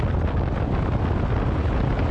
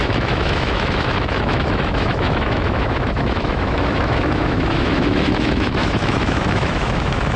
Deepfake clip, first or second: second